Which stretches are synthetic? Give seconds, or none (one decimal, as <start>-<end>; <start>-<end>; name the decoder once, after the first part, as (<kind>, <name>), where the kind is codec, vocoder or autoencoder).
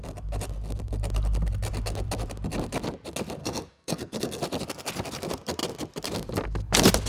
3.4-4.4 (codec, SNAC)